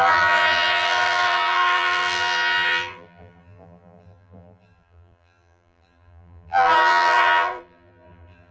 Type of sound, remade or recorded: remade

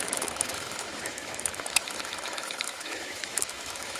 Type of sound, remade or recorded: remade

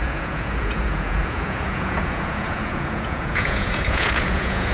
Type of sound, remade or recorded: remade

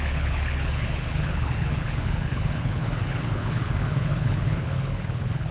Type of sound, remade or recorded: remade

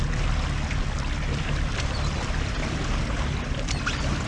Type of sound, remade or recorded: remade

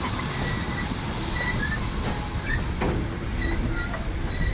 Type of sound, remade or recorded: recorded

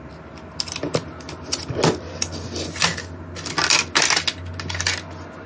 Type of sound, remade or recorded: recorded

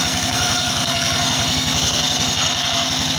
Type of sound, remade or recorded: remade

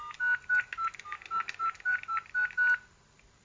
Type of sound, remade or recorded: recorded